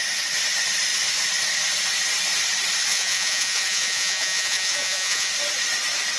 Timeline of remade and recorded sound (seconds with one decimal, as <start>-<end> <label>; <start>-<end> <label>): 0.0-2.9 recorded; 2.9-5.3 remade; 5.3-6.2 recorded

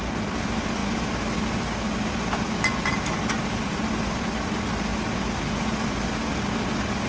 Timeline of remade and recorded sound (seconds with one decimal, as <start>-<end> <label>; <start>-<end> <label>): 0.0-7.1 recorded

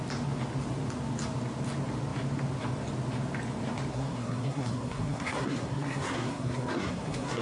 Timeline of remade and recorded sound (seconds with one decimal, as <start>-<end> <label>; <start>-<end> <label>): 0.0-3.9 recorded; 3.9-7.4 remade